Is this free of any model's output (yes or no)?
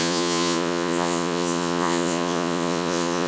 no